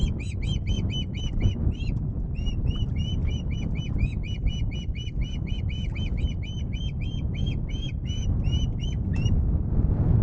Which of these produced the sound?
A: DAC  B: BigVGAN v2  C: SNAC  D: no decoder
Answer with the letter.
D